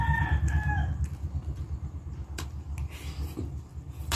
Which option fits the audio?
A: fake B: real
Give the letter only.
B